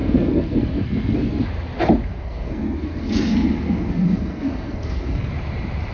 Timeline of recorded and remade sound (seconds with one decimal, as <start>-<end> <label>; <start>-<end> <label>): 0.0-1.4 remade; 1.4-2.1 recorded; 2.1-5.3 remade; 5.3-5.9 recorded